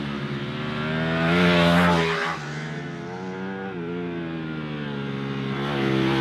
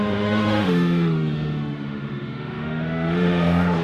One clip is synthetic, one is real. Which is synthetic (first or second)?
second